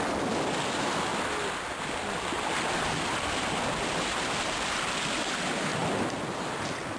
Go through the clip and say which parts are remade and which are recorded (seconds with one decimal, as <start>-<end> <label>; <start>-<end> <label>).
0.0-7.0 recorded